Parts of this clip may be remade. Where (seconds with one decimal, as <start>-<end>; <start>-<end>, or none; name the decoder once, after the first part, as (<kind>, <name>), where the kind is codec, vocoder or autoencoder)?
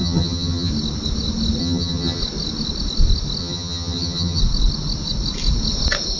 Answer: 0.0-0.7 (vocoder, HiFi-GAN); 1.6-2.2; 3.4-4.4